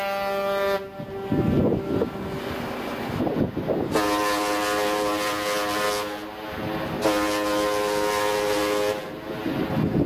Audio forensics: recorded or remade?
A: recorded